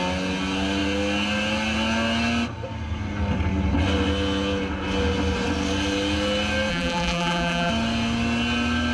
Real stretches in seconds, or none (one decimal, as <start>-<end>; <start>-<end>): 0.0-6.7; 7.7-8.9